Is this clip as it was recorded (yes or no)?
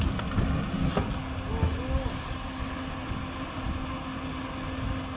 yes